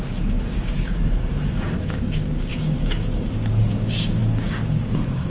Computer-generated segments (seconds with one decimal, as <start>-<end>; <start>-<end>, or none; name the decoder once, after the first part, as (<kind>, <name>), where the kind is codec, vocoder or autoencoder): 0.0-5.3 (codec, DAC)